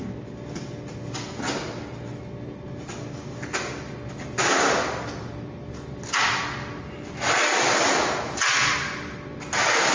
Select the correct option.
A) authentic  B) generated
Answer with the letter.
A